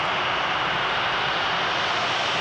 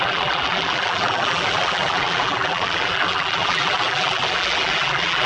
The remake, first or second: second